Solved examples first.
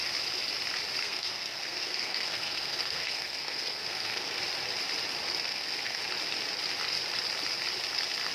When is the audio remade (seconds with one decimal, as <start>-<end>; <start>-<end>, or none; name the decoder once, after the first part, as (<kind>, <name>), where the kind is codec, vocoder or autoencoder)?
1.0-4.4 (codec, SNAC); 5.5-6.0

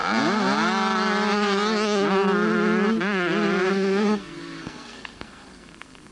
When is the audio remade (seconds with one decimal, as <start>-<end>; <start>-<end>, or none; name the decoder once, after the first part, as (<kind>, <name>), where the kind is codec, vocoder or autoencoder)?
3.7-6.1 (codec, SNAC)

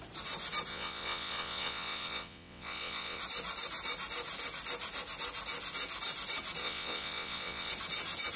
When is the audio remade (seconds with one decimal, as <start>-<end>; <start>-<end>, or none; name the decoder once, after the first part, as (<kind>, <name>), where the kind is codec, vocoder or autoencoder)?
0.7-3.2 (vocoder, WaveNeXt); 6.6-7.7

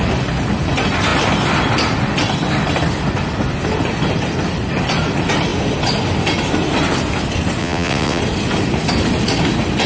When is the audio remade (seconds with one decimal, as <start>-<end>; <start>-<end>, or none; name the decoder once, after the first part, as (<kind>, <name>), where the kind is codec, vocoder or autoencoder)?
7.6-8.2 (vocoder, WaveNeXt)